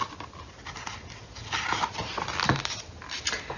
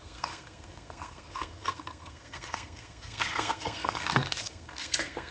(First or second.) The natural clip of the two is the first